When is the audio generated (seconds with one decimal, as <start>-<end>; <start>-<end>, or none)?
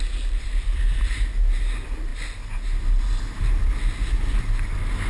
none